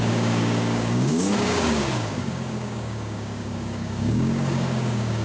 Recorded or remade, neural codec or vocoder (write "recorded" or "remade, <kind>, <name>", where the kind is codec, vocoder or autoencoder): remade, codec, DAC